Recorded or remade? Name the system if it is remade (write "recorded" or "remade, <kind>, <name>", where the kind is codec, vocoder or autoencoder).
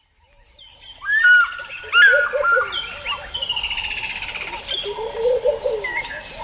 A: recorded